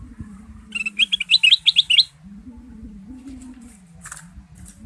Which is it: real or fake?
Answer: real